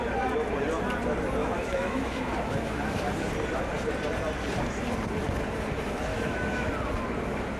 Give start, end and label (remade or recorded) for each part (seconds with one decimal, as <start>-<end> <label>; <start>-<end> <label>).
0.0-1.4 recorded; 1.4-2.8 remade; 2.8-6.1 recorded; 6.1-6.7 remade; 6.7-7.6 recorded